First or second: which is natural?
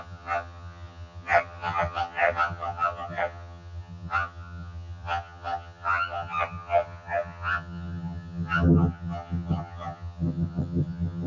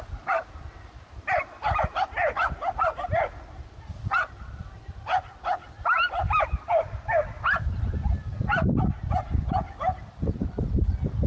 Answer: second